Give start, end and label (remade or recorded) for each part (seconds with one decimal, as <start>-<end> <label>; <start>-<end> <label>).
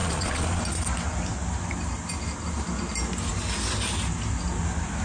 0.0-0.6 remade; 0.6-5.0 recorded